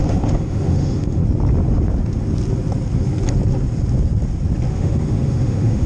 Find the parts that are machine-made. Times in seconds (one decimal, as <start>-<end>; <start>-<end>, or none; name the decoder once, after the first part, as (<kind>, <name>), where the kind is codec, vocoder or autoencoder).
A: 0.0-1.2 (autoencoder, DAC-VAE); 4.7-5.9